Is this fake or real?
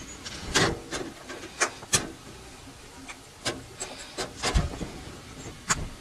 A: real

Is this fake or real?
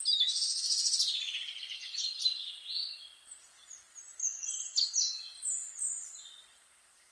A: real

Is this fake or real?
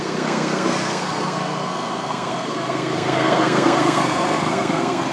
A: fake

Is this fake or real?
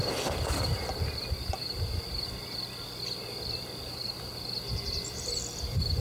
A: real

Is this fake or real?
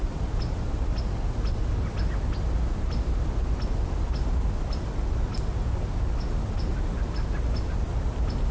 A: real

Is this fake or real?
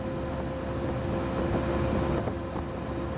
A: real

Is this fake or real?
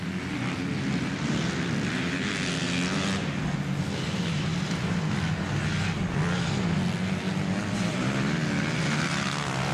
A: real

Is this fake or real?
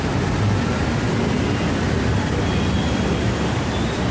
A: real